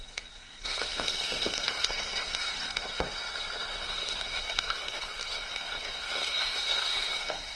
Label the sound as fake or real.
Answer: fake